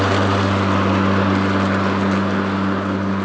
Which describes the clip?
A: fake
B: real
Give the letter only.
B